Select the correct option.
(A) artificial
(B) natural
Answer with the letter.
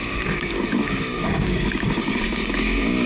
A